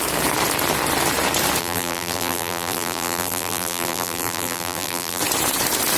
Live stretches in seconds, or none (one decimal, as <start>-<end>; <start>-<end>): 0.0-1.6; 5.2-6.0